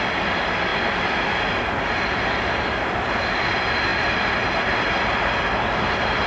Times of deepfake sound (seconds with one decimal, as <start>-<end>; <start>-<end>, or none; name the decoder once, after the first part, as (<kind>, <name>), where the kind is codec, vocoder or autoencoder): none